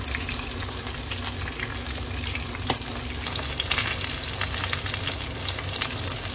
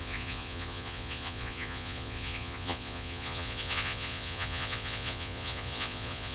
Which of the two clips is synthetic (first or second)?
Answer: second